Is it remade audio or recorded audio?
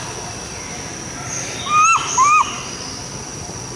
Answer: recorded